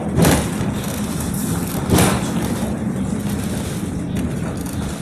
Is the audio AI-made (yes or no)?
no